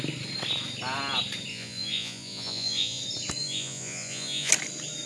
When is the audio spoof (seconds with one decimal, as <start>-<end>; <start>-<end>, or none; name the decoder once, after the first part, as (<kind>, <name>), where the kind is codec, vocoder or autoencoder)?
1.5-3.0 (vocoder, Vocos); 3.4-4.5